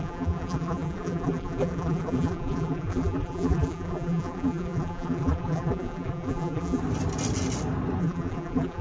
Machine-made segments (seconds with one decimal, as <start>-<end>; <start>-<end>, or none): 0.0-6.8; 8.0-8.8